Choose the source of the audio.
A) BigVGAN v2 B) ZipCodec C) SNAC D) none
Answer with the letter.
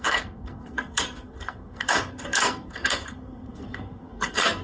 C